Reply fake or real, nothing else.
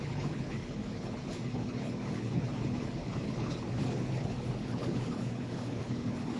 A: fake